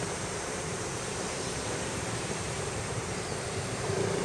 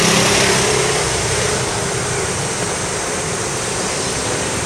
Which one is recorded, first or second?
second